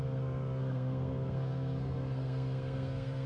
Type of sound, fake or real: fake